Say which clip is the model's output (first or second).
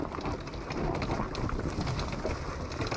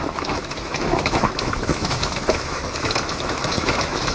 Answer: second